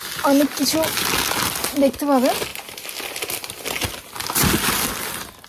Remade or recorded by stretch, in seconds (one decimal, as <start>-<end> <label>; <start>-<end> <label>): 0.0-5.5 recorded